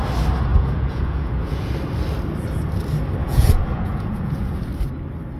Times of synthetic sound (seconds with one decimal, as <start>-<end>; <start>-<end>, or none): 0.5-1.7; 3.2-4.6